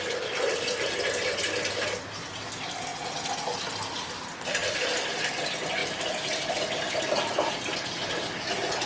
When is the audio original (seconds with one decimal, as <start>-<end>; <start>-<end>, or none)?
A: 0.0-4.6; 5.3-8.9